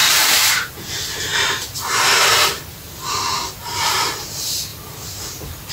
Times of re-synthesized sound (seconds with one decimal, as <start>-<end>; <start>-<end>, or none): 0.0-5.7